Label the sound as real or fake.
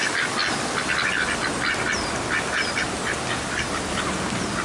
real